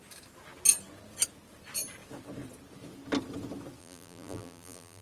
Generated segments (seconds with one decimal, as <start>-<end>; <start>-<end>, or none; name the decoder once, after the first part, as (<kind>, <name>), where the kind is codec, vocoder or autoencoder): 3.8-5.0 (vocoder, BigVGAN v2)